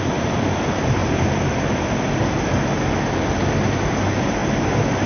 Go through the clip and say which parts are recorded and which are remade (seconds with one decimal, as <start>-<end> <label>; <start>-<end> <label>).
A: 0.0-5.1 recorded